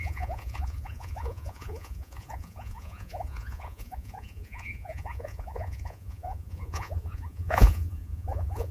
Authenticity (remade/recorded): remade